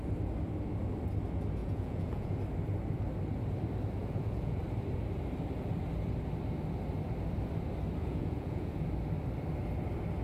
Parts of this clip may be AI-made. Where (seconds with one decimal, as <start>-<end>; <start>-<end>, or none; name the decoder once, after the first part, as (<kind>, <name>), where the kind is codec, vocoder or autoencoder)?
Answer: 1.6-2.4 (vocoder, Vocos); 4.0-4.6; 8.0-8.7